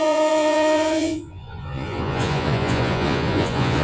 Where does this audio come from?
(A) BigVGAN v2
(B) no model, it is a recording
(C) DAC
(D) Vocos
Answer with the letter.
D